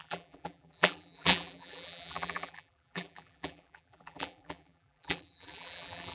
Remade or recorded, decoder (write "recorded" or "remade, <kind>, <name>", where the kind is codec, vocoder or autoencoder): remade, vocoder, BigVGAN v2